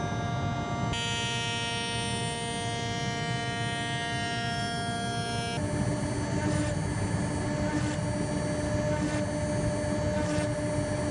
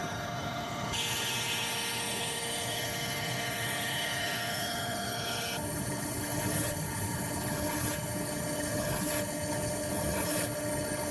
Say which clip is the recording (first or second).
first